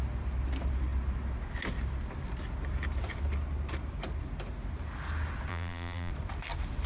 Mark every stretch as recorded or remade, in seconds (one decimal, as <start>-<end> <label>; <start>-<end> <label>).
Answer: 0.0-5.5 recorded; 5.5-6.1 remade; 6.1-6.9 recorded